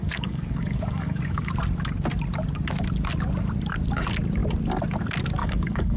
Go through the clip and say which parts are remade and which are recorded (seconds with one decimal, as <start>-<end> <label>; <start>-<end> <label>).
0.0-1.5 remade; 1.5-5.4 recorded; 5.4-6.0 remade